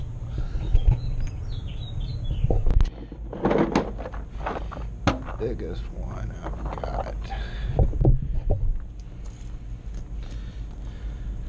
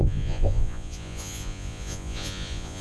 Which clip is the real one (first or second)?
first